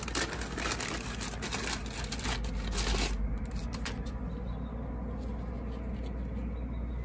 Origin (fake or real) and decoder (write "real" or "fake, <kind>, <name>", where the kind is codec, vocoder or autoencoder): real